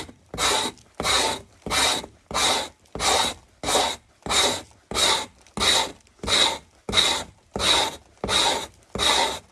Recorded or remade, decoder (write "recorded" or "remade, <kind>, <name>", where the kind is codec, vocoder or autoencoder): recorded